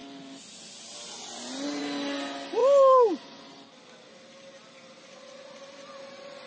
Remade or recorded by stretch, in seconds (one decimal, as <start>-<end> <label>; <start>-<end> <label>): 0.0-6.5 recorded

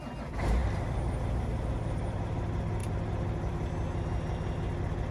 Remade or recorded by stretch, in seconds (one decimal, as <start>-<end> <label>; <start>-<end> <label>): 0.0-5.1 recorded

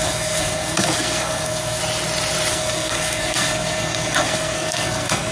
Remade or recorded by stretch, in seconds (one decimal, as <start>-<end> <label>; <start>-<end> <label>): 0.0-1.8 remade; 1.8-2.5 recorded; 2.5-5.3 remade

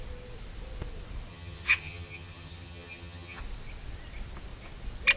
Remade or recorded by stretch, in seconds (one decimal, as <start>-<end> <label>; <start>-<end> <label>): 0.0-1.3 recorded; 1.3-3.4 remade; 3.4-5.2 recorded

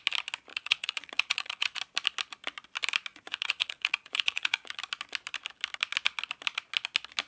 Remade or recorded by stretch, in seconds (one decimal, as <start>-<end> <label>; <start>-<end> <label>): 0.0-0.5 recorded; 0.5-1.8 remade; 1.8-3.1 recorded; 3.1-4.8 remade; 4.8-7.3 recorded